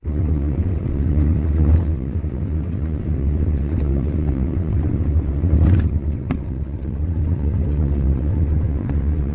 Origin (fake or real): fake